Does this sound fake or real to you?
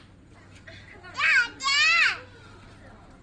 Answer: real